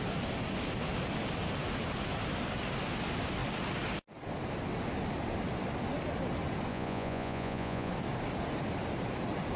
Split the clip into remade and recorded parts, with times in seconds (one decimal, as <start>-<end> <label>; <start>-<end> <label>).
0.0-6.7 recorded; 6.7-7.9 remade; 7.9-9.6 recorded